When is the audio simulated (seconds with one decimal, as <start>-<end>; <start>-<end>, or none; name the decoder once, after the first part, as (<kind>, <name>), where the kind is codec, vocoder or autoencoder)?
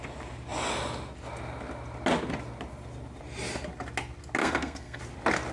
4.4-5.0 (codec, SNAC)